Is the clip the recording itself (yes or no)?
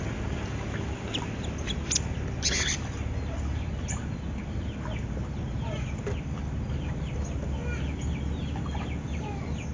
yes